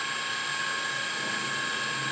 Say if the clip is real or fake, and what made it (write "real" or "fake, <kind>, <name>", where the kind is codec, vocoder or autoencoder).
real